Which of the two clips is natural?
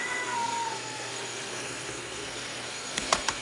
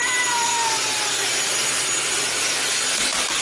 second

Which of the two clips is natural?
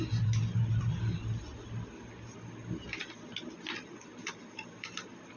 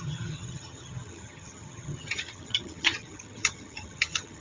first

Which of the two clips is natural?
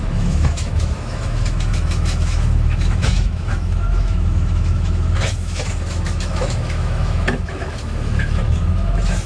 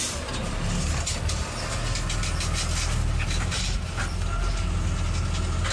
second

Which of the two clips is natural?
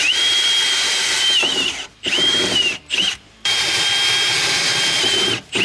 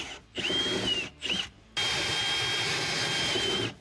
second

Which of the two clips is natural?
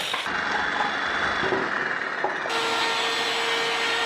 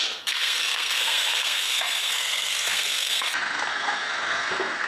first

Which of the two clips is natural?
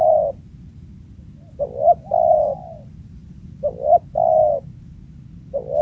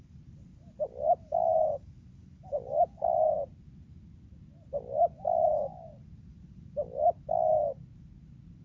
first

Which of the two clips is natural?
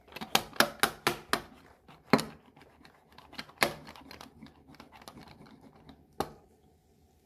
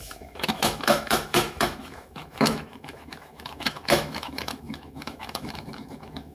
first